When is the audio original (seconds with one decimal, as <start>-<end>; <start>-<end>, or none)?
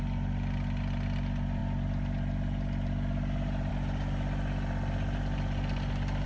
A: 0.0-6.3